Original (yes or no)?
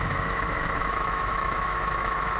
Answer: no